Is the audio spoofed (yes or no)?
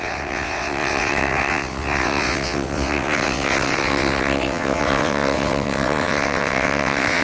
yes